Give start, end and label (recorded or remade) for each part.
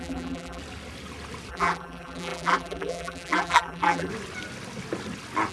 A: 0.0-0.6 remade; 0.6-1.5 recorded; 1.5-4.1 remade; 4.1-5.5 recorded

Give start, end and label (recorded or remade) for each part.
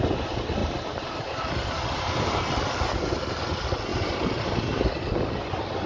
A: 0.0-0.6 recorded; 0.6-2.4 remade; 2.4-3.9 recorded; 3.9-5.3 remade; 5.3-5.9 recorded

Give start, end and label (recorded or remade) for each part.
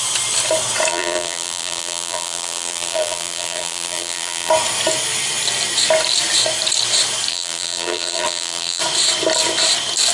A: 0.0-0.9 recorded; 0.9-4.5 remade; 4.5-7.3 recorded; 7.3-8.8 remade; 8.8-10.1 recorded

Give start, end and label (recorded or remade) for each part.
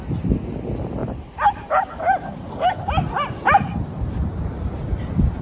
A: 0.0-1.0 recorded; 1.0-3.8 remade; 3.8-5.4 recorded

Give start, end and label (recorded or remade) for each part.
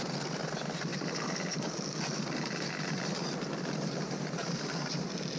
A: 0.0-5.4 recorded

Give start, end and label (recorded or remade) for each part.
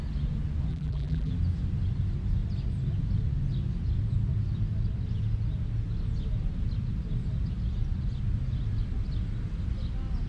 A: 0.0-0.7 recorded; 0.7-1.3 remade; 1.3-10.3 recorded